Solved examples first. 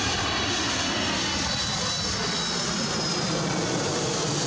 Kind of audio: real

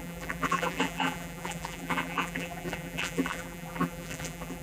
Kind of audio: fake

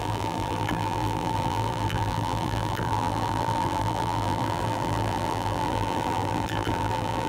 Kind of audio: fake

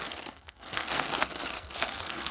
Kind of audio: fake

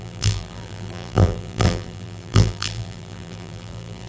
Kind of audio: fake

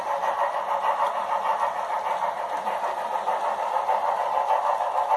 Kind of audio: real